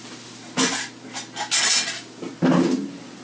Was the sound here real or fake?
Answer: real